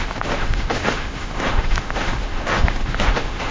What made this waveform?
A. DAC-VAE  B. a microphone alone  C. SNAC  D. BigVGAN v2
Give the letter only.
A